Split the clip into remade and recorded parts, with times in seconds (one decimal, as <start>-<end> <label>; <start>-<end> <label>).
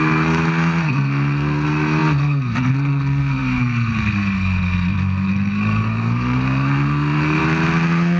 0.0-7.4 remade; 7.4-8.2 recorded